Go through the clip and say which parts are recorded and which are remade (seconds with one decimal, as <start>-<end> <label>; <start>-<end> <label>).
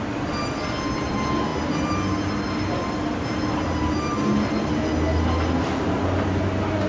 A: 0.0-6.9 recorded